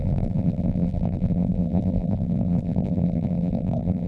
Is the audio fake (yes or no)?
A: yes